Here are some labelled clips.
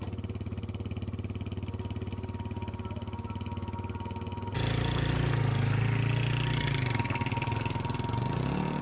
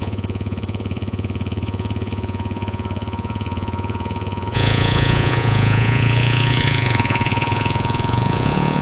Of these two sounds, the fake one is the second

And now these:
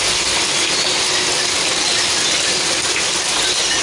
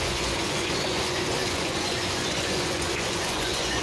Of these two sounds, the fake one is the second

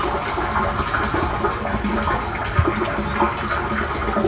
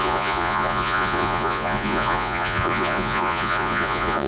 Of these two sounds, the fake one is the second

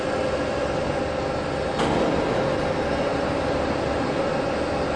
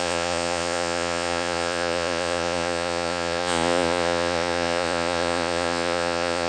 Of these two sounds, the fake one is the second